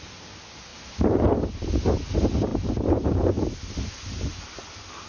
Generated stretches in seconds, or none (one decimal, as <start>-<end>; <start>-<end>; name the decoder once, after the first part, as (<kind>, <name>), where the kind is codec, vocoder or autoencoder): 0.7-1.3 (vocoder, BigVGAN v2); 2.5-3.7